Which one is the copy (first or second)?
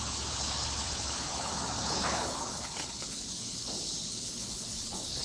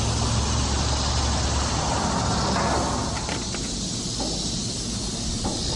first